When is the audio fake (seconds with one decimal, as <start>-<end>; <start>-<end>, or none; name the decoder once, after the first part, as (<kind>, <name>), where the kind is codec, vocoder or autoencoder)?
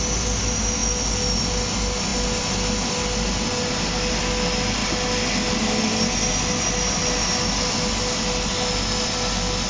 none